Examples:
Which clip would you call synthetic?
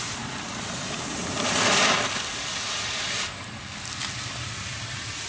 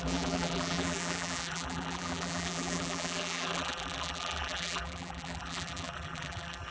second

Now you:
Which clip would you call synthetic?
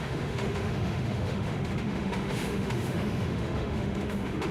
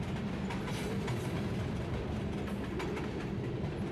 first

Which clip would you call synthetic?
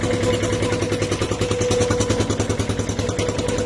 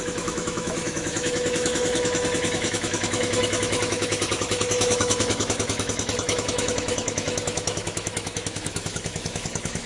second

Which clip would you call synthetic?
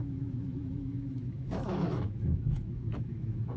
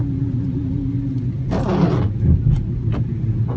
first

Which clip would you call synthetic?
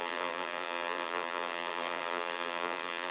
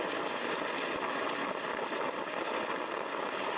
first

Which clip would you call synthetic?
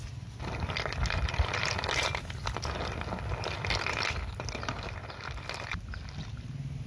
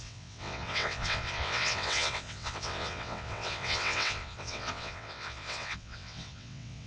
second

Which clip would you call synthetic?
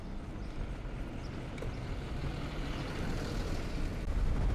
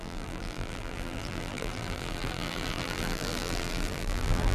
second